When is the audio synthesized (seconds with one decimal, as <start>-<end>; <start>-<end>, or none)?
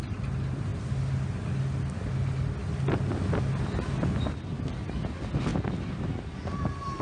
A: none